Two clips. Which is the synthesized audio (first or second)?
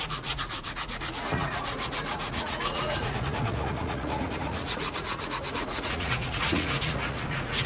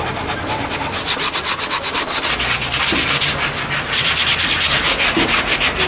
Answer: first